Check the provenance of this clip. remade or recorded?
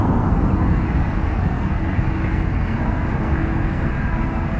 remade